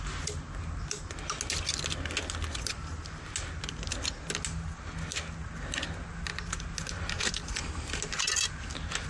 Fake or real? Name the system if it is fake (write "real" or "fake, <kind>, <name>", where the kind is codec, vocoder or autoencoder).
real